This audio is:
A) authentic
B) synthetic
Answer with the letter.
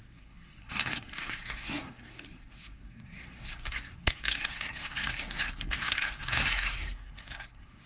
B